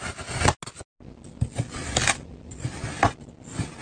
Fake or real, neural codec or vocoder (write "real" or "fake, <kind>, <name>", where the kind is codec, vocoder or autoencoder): real